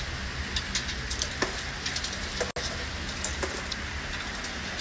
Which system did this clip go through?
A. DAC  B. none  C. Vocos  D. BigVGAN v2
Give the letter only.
B